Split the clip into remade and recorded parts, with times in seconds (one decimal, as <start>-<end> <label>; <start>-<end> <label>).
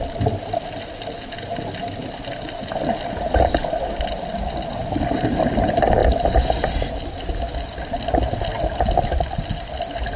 0.0-10.2 recorded